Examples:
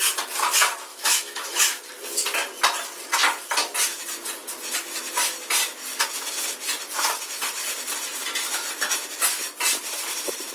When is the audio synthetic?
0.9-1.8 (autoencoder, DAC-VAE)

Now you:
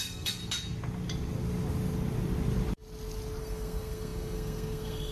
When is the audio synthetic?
0.0-0.4 (codec, SNAC); 3.4-5.1

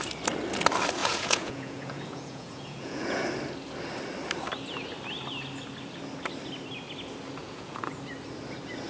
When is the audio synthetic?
1.0-3.2 (vocoder, Vocos); 7.4-7.9

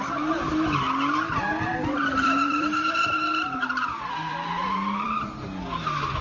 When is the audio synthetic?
1.7-5.4 (vocoder, BigVGAN v2)

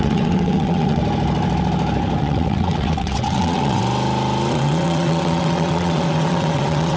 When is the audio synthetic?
0.0-1.0 (vocoder, WaveNeXt); 2.2-3.8; 4.5-7.0